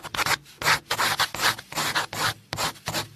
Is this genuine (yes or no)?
yes